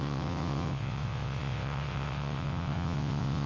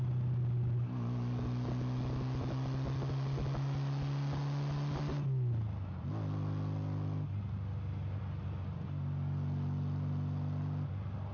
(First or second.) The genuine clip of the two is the second